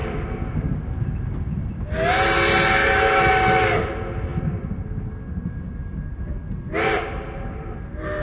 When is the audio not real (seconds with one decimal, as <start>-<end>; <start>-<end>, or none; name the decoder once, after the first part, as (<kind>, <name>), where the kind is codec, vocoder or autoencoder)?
2.8-3.3 (autoencoder, DAC-VAE)